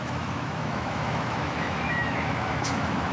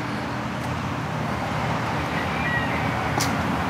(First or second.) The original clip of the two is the second